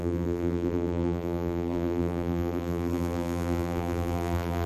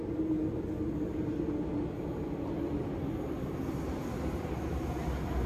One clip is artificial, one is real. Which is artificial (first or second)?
first